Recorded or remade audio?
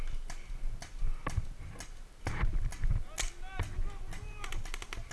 recorded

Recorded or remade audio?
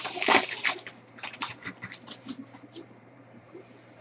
remade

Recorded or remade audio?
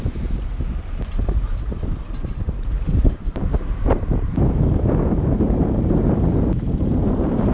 remade